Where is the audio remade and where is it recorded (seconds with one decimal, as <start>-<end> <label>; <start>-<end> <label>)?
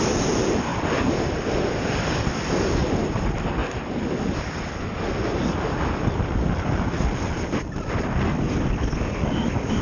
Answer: 0.0-3.6 remade; 3.6-5.1 recorded; 5.1-9.8 remade